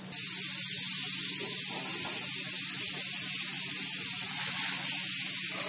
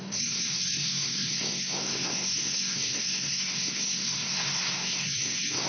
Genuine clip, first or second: first